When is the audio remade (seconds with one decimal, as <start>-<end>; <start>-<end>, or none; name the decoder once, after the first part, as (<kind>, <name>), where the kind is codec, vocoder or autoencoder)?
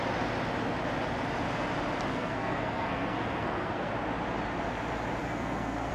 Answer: 2.1-3.9 (codec, SNAC); 5.2-5.9